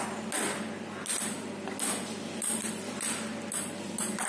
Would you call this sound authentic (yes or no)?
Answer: yes